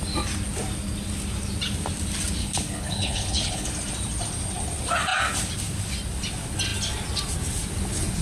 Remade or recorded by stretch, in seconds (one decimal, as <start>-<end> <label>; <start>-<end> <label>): 0.0-2.4 recorded; 2.4-3.7 remade; 3.7-8.2 recorded